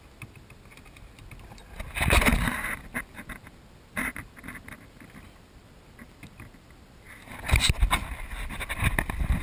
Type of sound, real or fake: real